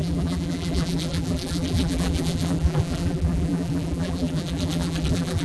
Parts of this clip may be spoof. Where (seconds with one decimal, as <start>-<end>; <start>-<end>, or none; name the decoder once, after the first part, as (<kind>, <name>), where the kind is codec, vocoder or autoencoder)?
0.0-5.4 (vocoder, BigVGAN v2)